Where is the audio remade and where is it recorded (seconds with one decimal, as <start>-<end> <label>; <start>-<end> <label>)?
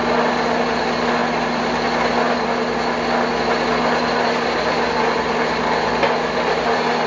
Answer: 0.0-7.1 recorded